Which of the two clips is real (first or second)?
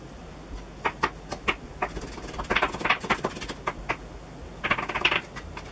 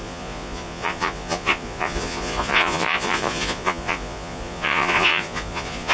first